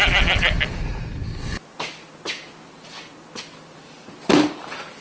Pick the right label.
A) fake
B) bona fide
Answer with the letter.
B